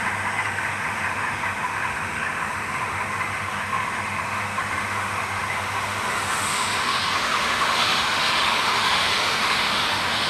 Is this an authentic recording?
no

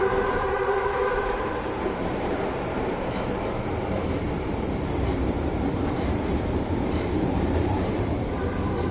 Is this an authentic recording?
no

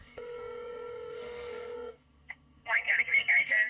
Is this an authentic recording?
no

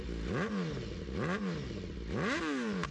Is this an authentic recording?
yes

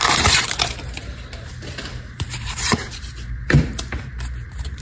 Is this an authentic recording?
no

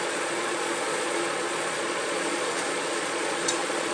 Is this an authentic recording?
no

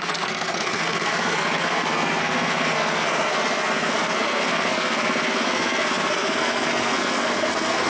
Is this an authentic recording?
no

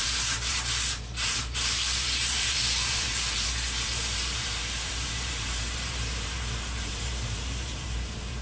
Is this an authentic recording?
no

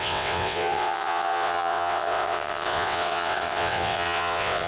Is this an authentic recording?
no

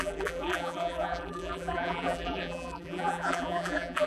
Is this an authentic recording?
no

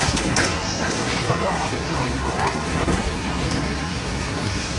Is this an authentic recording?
no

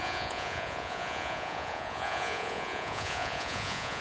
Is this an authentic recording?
no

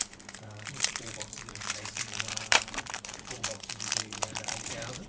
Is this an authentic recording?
no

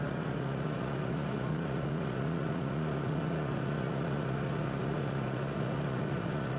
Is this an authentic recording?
no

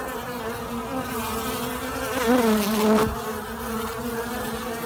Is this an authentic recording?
yes